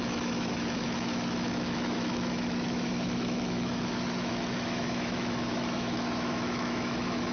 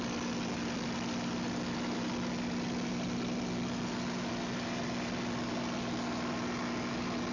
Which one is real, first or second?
second